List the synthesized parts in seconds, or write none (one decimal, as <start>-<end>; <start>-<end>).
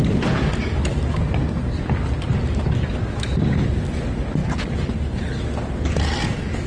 4.4-5.4